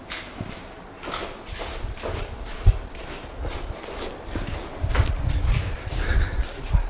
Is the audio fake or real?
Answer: real